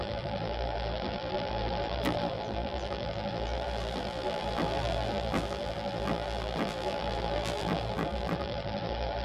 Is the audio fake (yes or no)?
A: yes